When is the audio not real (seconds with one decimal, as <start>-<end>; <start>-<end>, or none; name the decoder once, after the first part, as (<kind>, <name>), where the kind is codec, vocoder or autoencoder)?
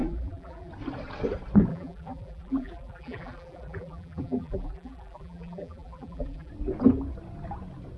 0.0-0.7 (vocoder, BigVGAN v2); 1.7-6.5